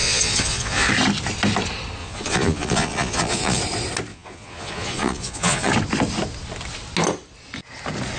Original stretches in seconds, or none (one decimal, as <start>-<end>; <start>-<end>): 0.9-2.0; 3.6-4.1; 5.7-8.2